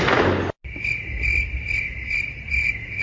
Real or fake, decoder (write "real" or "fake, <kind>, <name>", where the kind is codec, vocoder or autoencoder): real